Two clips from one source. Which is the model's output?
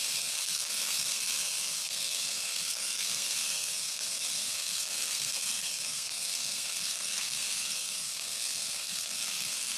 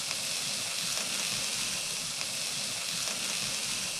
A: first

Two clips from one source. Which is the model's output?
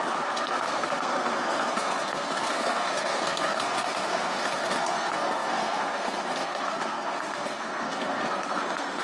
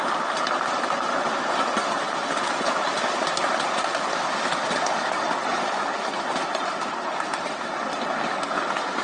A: first